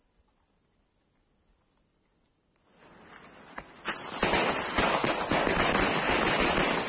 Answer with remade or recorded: recorded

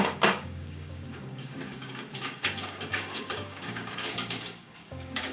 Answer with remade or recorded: remade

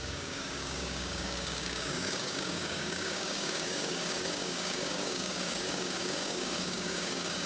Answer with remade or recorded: remade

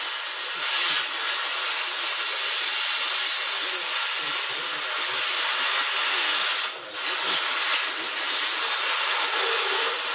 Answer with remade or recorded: recorded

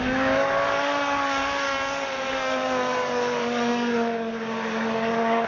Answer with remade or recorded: remade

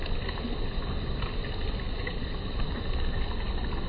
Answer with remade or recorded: recorded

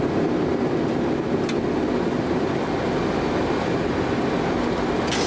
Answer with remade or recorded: recorded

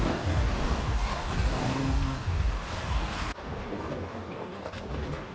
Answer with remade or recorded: remade